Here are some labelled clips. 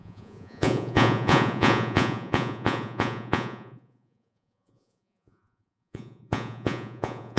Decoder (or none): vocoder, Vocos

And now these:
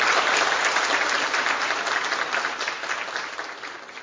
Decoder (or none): none